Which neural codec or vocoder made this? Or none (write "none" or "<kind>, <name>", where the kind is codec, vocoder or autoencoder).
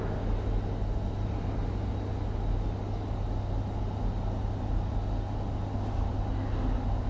none